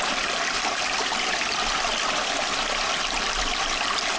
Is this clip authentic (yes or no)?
yes